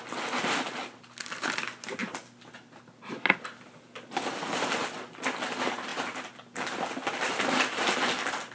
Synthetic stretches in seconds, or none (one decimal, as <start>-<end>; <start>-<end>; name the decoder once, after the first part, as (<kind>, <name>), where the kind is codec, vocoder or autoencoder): none